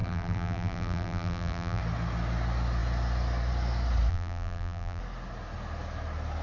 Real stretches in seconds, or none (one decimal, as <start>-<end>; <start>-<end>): 1.8-4.1; 5.0-6.4